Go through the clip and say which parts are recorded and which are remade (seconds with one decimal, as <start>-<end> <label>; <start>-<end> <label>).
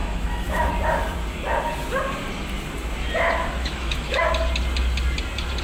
0.0-0.7 remade; 0.7-3.6 recorded; 3.6-4.2 remade; 4.2-5.6 recorded